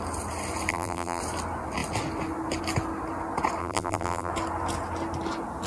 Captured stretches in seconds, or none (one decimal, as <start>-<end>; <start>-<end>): 0.0-0.7; 1.2-3.6; 4.3-5.7

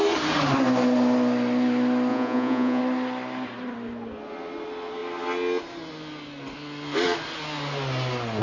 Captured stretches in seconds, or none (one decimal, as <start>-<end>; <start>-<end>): 0.0-2.1; 2.8-8.4

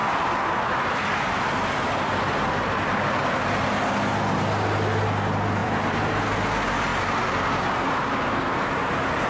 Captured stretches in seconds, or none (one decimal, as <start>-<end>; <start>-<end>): 3.7-5.6; 6.2-9.3

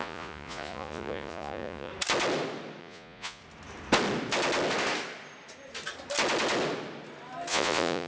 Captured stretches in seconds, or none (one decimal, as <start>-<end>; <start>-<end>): 1.9-2.8; 3.4-7.5

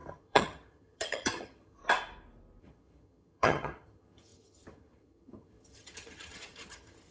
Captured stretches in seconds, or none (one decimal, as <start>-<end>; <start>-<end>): 1.8-2.6

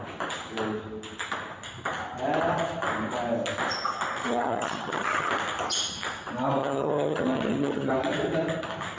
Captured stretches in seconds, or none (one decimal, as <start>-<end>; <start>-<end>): 0.0-4.2; 5.3-6.6; 7.9-9.0